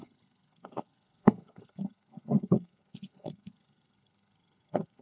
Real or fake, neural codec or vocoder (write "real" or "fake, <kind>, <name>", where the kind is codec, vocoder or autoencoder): fake, codec, SNAC